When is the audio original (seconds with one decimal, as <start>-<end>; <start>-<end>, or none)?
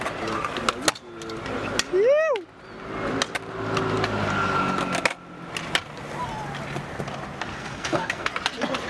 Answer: 0.0-7.5; 8.3-8.9